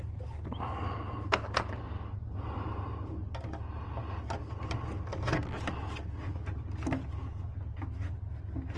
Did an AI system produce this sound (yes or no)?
no